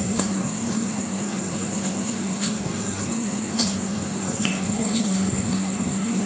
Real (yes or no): no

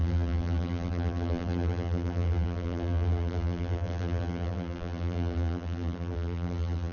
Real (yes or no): no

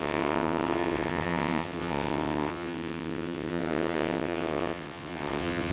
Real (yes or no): no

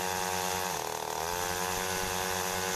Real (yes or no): yes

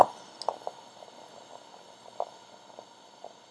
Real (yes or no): yes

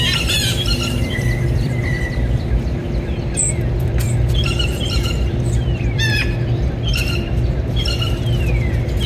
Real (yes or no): no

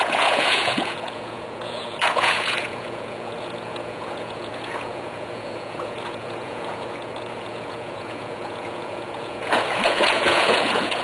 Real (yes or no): no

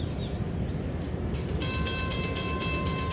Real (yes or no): yes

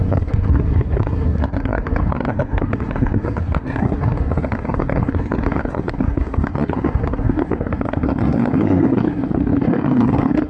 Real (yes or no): no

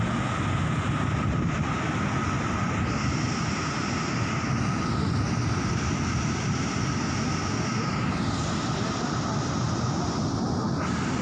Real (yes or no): yes